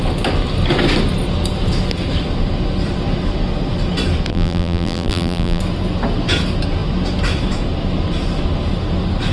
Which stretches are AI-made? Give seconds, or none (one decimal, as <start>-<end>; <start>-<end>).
4.3-5.6